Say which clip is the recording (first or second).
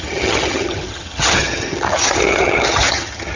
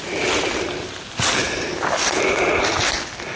second